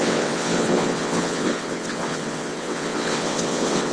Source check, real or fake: fake